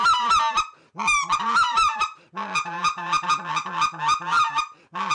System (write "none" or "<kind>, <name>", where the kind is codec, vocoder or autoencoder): none